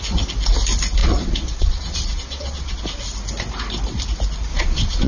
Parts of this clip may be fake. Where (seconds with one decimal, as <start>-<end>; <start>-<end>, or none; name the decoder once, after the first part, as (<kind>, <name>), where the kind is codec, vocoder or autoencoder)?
1.0-2.8 (vocoder, Vocos); 4.5-5.1

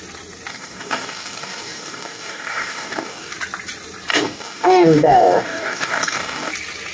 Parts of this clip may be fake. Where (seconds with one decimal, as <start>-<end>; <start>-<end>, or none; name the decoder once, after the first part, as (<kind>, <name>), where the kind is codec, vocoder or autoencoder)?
0.5-3.3 (codec, DAC); 4.1-6.5

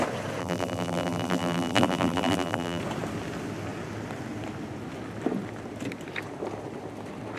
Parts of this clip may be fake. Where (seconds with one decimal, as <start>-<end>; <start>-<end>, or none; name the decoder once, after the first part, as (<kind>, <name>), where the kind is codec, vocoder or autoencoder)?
0.4-2.8 (vocoder, BigVGAN v2)

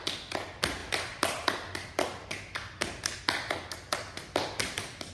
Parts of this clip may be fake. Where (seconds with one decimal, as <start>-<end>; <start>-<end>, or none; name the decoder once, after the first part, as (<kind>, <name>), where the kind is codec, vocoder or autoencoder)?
none